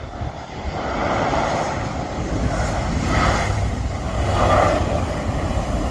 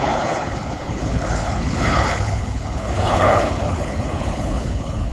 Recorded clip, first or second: first